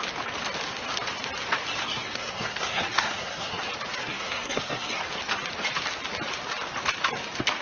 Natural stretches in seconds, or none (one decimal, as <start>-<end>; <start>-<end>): 0.0-1.8; 3.6-4.0; 5.0-7.6